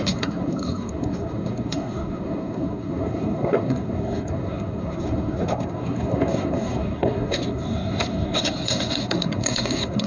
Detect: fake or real fake